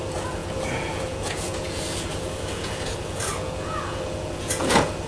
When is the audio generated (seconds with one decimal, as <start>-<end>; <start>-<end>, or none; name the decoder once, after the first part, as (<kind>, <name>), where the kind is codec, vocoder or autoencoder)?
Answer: 0.0-5.1 (vocoder, Vocos)